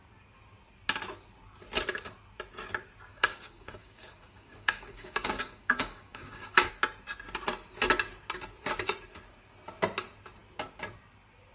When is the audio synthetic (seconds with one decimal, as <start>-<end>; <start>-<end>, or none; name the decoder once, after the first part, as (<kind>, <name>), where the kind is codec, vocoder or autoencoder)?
3.1-6.7 (codec, DAC)